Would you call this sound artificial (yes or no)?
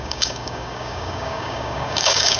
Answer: yes